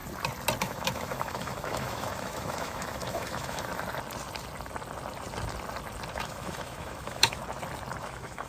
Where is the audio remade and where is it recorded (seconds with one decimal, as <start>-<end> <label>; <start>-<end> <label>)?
0.0-0.6 recorded; 0.6-3.7 remade; 3.7-6.1 recorded; 6.1-7.4 remade; 7.4-8.0 recorded; 8.0-8.5 remade